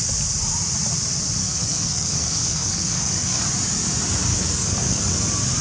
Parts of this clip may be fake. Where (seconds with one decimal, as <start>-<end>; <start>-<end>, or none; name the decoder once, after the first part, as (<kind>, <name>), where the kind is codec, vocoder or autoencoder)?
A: 1.4-3.4 (codec, SNAC); 4.3-5.0